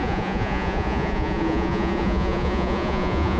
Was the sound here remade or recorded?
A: remade